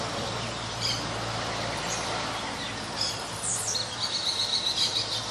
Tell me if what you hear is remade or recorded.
recorded